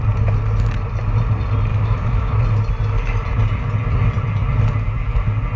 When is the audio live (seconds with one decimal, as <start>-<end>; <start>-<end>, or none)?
0.0-1.7; 2.4-5.6